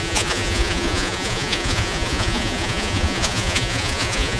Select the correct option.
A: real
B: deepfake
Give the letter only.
B